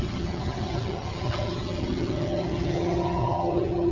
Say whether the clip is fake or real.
fake